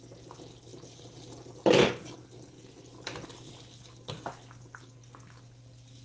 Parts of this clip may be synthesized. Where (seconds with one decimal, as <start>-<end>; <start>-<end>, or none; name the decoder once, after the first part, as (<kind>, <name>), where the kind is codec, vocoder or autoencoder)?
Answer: none